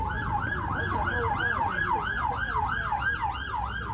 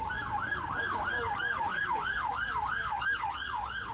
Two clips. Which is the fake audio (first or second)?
second